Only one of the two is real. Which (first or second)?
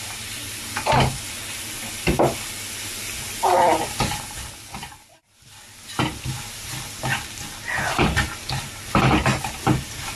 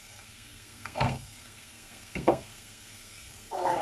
first